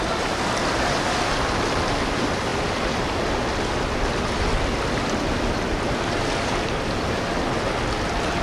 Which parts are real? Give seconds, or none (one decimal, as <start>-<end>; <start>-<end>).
0.0-8.4